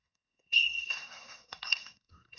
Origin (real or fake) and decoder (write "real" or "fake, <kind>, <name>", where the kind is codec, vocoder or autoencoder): fake, codec, SNAC